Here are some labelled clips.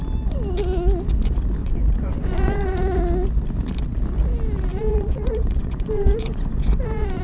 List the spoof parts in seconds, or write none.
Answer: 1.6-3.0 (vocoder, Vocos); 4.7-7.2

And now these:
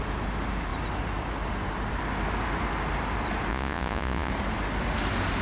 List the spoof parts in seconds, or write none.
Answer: 3.5-4.3 (vocoder, Vocos)

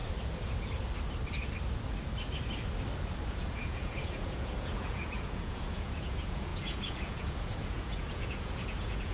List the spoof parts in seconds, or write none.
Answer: 3.3-9.1 (vocoder, Vocos)

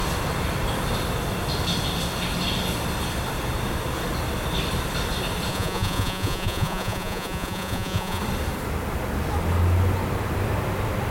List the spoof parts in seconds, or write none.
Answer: 5.5-8.2 (vocoder, Vocos)